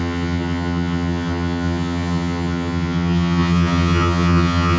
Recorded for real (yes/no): no